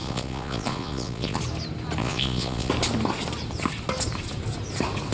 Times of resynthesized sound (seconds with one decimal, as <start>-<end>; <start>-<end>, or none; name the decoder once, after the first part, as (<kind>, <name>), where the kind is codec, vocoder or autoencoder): 0.0-1.4 (vocoder, Vocos); 2.0-2.7